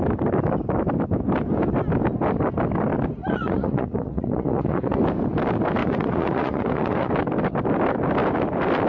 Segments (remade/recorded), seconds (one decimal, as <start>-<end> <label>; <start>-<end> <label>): 0.0-3.2 recorded; 3.2-5.0 remade; 5.0-5.8 recorded; 5.8-7.1 remade; 7.1-8.9 recorded